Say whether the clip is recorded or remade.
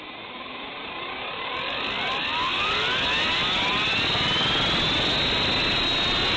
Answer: recorded